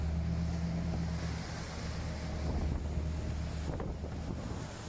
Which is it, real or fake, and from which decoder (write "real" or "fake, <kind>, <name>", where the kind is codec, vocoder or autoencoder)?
real